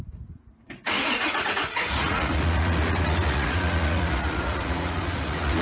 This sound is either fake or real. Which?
fake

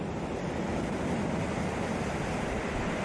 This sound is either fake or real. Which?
real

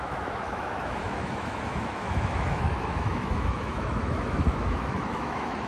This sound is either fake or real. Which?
fake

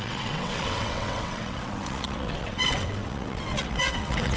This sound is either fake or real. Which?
fake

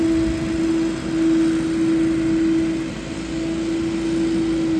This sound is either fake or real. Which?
real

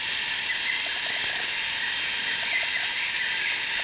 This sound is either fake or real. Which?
real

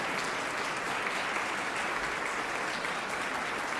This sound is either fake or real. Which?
real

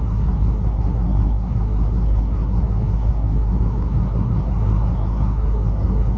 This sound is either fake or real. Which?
fake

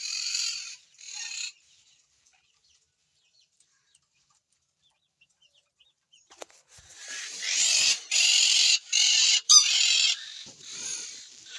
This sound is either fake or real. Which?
fake